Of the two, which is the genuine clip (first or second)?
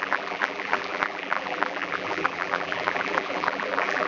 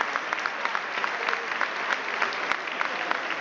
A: second